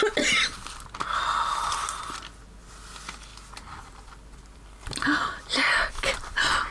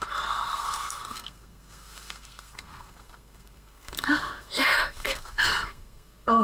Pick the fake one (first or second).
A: second